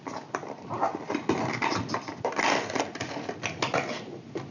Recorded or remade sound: recorded